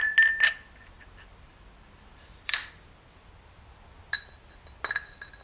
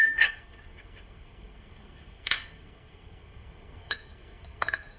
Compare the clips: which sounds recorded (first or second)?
first